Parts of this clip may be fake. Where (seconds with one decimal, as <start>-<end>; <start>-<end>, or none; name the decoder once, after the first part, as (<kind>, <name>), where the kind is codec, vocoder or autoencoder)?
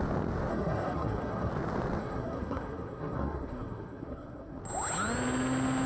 0.5-1.5 (codec, SNAC); 2.0-4.6